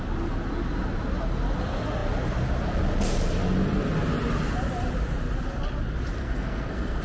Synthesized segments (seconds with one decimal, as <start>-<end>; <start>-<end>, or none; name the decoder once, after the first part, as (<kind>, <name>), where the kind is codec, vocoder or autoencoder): 6.2-7.0 (codec, SNAC)